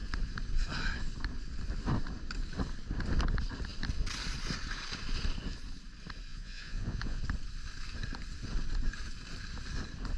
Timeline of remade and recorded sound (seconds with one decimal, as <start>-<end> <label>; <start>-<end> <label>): 0.0-6.3 recorded; 6.3-7.2 remade; 7.2-10.2 recorded